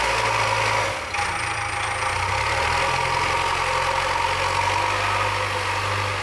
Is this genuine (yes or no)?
yes